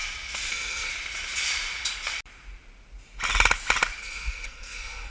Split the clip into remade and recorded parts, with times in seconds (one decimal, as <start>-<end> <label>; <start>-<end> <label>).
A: 0.0-0.5 recorded; 0.5-0.9 remade; 0.9-4.0 recorded; 4.0-5.1 remade